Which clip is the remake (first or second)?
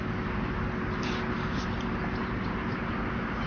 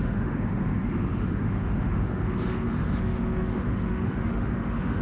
second